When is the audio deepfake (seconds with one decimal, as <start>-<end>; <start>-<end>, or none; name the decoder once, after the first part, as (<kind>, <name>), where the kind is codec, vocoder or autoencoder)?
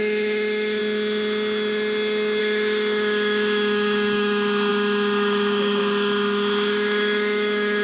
0.0-0.8 (autoencoder, DAC-VAE); 2.4-7.8